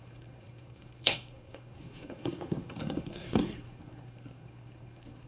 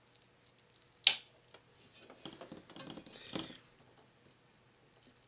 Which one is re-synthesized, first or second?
first